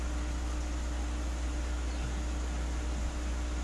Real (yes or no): yes